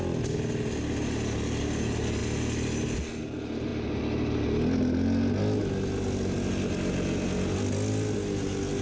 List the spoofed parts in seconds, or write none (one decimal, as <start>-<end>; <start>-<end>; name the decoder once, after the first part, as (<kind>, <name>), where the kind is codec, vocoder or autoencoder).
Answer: none